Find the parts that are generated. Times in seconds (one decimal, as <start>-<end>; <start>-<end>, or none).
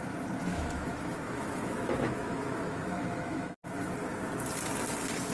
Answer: 0.5-3.6